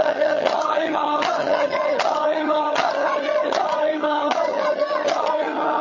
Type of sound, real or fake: fake